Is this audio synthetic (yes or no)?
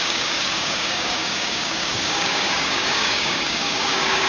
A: yes